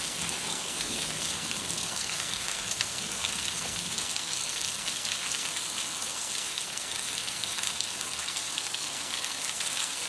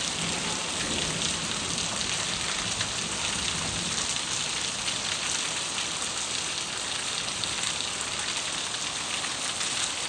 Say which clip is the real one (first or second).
second